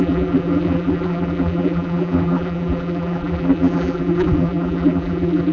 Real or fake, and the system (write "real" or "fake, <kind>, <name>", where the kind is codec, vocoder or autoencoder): fake, vocoder, BigVGAN v2